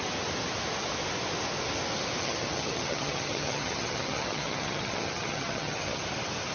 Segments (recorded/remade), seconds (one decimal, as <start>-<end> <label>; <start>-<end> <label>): 0.0-2.2 recorded; 2.2-6.0 remade; 6.0-6.5 recorded